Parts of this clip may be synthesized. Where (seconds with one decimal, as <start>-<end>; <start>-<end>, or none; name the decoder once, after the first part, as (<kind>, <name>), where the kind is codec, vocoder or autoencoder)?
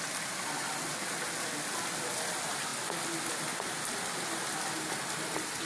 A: none